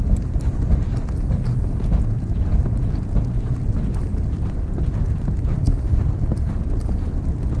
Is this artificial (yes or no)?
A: no